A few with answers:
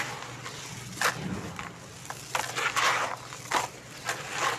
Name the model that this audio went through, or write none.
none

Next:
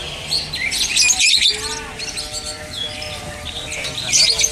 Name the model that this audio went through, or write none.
none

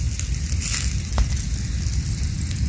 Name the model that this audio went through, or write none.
none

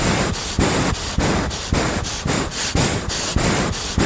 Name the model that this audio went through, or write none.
none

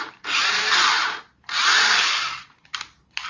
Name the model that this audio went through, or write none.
vocoder, BigVGAN v2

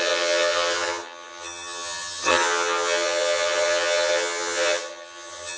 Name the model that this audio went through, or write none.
vocoder, HiFi-GAN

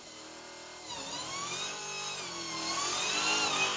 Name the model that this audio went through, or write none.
none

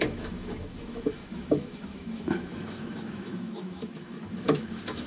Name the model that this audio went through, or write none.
autoencoder, DAC-VAE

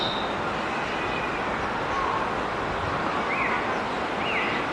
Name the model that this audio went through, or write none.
none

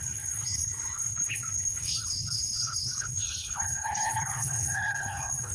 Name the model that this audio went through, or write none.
codec, HILCodec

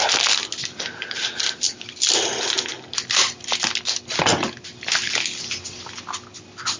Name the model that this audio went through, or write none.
none